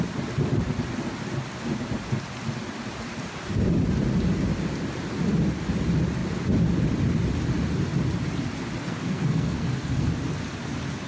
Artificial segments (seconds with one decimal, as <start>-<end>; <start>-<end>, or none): 8.8-10.1